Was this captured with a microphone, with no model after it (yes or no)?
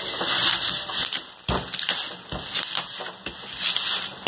yes